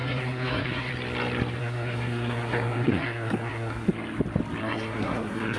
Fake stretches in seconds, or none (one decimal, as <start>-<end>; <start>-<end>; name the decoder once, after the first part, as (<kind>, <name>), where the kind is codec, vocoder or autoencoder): 0.0-0.9 (codec, SNAC); 1.6-3.9; 4.6-5.6